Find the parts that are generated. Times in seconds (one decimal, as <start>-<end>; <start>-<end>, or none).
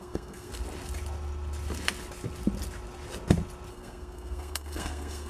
0.0-0.5; 3.7-5.3